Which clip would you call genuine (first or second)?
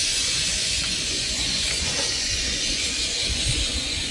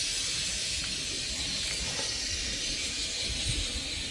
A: second